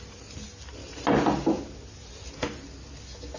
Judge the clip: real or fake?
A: real